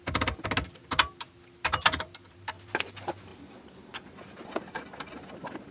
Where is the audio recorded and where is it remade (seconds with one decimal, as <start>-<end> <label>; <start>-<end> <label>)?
0.0-3.3 recorded; 3.3-4.6 remade; 4.6-5.7 recorded